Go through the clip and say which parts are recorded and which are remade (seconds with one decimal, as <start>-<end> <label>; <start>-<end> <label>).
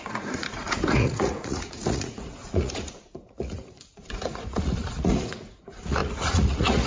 0.0-6.9 remade